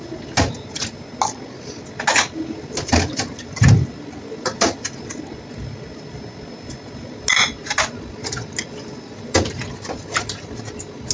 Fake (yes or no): no